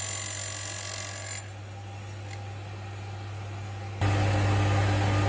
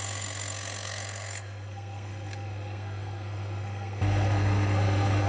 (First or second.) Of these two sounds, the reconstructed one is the second